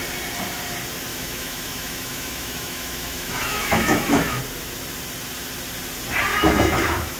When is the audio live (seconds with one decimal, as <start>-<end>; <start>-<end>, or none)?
0.0-1.1; 4.4-6.3